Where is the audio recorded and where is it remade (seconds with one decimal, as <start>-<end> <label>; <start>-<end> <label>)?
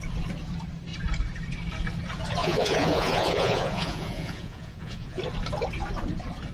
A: 0.0-2.4 recorded; 2.4-5.2 remade; 5.2-6.5 recorded